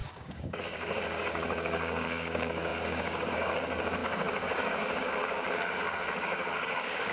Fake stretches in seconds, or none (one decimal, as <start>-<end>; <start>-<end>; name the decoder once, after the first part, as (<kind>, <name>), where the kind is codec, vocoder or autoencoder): 0.0-7.1 (codec, DAC)